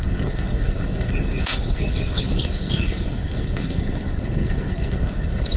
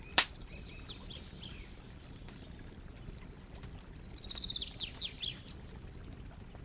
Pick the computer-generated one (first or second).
first